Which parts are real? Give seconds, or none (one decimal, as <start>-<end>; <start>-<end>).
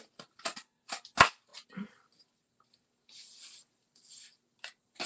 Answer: 0.0-5.1